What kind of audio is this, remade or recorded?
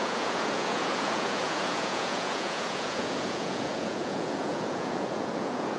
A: remade